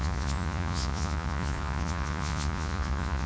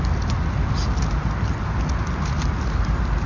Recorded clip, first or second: second